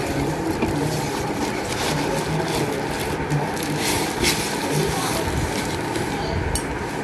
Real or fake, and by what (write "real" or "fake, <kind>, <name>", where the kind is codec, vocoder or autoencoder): real